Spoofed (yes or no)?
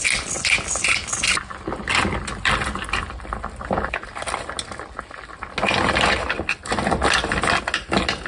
no